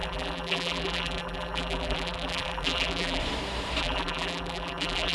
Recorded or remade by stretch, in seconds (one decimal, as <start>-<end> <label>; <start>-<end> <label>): 0.0-3.2 remade; 3.2-3.8 recorded; 3.8-5.1 remade